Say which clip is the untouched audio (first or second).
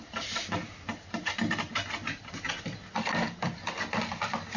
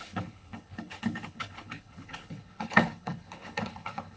first